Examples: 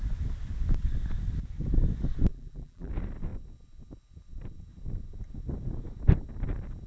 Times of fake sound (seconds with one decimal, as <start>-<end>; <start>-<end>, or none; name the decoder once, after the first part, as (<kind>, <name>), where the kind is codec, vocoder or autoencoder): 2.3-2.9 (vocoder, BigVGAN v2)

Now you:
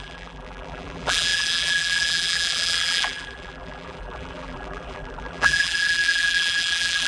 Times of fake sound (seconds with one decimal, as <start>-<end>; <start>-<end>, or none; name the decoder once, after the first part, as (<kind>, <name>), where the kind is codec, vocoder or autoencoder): 0.0-7.1 (vocoder, BigVGAN v2)

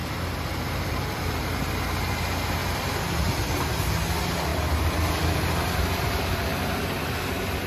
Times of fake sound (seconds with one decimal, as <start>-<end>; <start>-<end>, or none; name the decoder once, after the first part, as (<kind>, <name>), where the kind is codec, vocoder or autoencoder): 0.0-1.4 (vocoder, BigVGAN v2); 2.6-3.4; 4.5-6.5

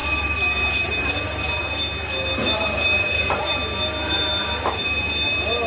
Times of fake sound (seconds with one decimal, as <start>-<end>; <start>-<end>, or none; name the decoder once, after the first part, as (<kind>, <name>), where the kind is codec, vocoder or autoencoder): 0.0-1.6 (vocoder, BigVGAN v2); 2.4-3.4

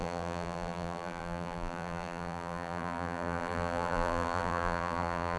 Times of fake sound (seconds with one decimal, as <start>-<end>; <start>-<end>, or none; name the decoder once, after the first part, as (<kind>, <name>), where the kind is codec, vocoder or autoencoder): 0.0-5.4 (vocoder, BigVGAN v2)